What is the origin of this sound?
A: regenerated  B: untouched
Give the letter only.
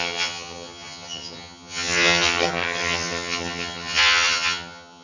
A